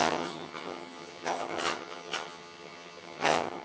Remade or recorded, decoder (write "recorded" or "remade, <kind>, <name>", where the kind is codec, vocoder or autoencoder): remade, vocoder, HiFi-GAN